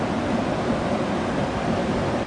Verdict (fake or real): real